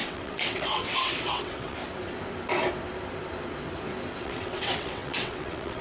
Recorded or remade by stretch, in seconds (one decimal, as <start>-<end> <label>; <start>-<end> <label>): 0.0-1.8 remade; 1.8-4.2 recorded; 4.2-5.8 remade